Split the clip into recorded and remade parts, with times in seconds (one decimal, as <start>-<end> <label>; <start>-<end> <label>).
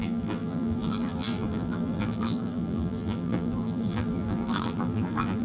0.0-5.4 remade